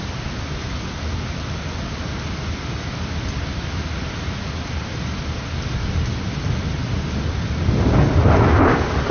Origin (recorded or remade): recorded